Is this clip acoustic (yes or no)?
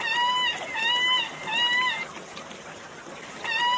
yes